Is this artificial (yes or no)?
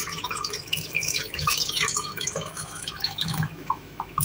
yes